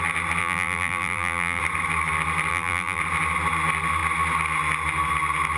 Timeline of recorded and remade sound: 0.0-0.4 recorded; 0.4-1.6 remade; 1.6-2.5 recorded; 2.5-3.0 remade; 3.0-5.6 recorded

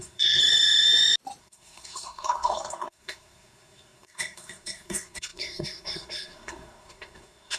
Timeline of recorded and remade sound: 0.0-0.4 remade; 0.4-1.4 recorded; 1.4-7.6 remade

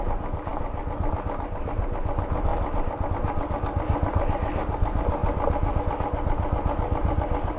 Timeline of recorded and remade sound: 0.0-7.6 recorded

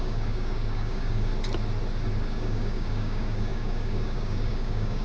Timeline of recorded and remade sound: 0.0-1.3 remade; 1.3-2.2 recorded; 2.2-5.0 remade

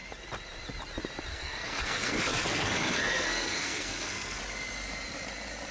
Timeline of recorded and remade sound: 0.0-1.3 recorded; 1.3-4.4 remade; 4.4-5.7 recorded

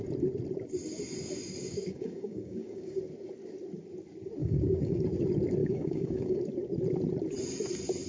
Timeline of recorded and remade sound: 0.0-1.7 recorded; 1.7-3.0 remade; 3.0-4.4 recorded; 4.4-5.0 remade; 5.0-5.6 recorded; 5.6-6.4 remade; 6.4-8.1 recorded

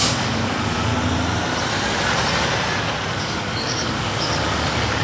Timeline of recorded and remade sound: 0.0-0.9 remade; 0.9-3.2 recorded; 3.2-5.0 remade

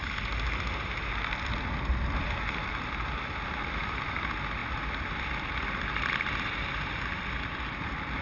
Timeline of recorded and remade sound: 0.0-8.2 recorded